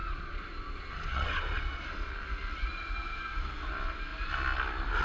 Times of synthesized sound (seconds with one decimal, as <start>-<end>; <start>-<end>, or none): 0.0-2.1